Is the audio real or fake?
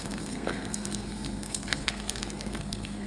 fake